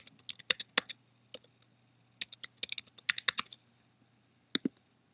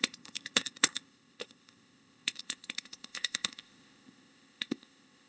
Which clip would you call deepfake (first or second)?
second